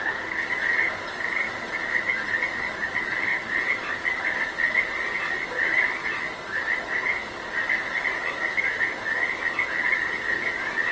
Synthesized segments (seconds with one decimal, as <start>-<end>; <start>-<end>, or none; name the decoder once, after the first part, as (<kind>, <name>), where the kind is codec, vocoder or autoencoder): none